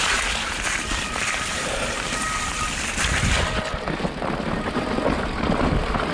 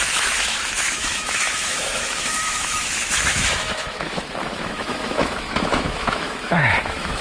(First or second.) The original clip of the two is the first